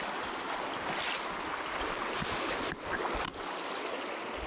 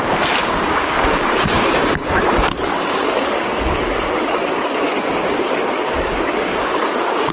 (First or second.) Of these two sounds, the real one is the first